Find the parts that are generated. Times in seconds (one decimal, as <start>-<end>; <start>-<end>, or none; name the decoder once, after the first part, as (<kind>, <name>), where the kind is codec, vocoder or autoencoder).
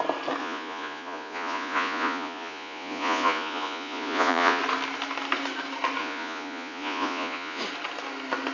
0.4-4.6 (vocoder, Vocos); 6.0-7.6